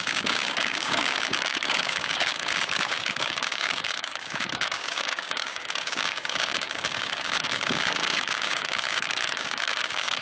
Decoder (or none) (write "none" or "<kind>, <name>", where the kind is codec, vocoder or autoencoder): codec, DAC